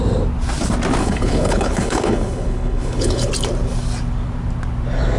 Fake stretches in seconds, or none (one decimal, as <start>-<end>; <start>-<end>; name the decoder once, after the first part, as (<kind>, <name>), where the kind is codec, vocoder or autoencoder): 1.0-3.3 (codec, HILCodec)

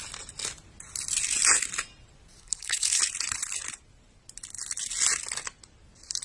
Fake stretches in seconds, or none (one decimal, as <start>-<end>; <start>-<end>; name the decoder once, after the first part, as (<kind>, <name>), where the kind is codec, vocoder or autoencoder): 2.4-3.0 (codec, HILCodec)

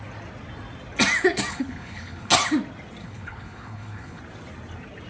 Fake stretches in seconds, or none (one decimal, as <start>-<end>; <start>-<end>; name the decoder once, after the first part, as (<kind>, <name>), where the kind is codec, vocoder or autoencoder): 1.5-2.3 (codec, HILCodec); 3.0-4.2

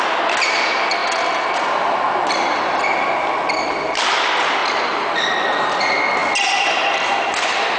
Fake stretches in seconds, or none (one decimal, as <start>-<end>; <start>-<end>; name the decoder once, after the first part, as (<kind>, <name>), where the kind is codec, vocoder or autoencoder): none

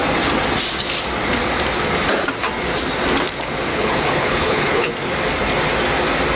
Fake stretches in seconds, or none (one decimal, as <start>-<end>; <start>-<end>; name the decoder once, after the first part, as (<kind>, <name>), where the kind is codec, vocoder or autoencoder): 3.7-4.9 (codec, HILCodec)